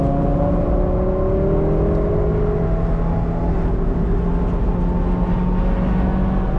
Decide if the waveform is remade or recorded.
recorded